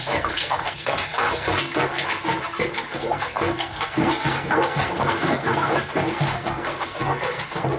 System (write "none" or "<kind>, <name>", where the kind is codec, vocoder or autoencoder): codec, SNAC